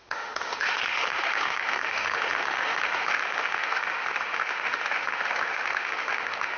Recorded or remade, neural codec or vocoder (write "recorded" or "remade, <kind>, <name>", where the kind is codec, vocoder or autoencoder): remade, autoencoder, DAC-VAE